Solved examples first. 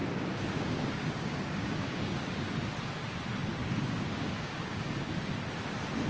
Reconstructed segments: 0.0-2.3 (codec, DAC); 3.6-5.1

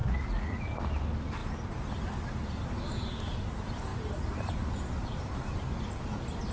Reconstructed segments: 0.0-0.6 (vocoder, Vocos)

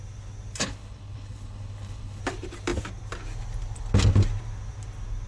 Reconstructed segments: 0.6-2.2 (codec, HILCodec)

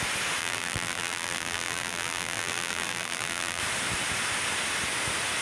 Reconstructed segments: 0.4-3.6 (vocoder, BigVGAN v2)

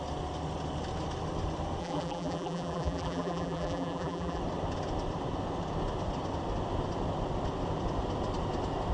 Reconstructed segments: 1.8-4.4 (vocoder, BigVGAN v2)